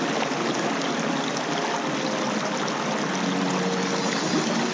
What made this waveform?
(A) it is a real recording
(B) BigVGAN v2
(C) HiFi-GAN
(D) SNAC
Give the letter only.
A